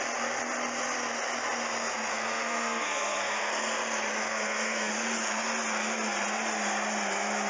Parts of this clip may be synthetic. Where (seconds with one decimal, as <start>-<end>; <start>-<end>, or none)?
2.1-3.5; 4.2-4.9